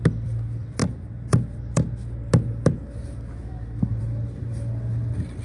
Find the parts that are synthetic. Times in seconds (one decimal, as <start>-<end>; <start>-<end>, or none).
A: 0.0-5.4